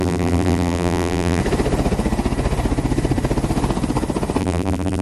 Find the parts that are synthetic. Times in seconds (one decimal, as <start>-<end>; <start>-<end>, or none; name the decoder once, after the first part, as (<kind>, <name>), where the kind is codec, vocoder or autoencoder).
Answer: 0.0-1.4 (vocoder, BigVGAN v2); 4.4-5.0